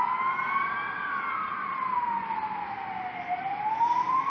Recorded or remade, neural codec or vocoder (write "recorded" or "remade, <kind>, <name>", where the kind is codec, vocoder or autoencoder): recorded